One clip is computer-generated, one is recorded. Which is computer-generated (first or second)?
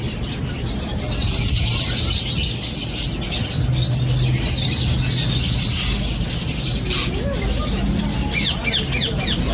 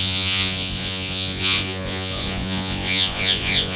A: second